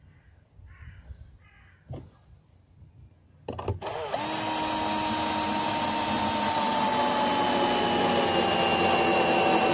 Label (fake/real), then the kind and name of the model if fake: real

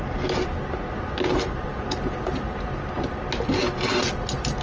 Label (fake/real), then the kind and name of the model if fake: real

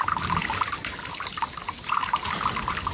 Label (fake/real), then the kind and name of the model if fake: real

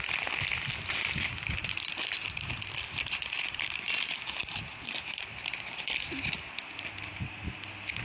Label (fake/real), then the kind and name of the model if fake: real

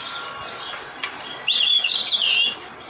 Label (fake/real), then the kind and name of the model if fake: real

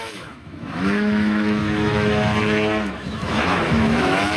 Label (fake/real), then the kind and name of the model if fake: fake, autoencoder, DAC-VAE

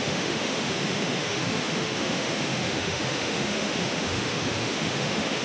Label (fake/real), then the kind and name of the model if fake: fake, autoencoder, DAC-VAE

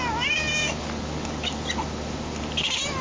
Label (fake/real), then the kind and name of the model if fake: real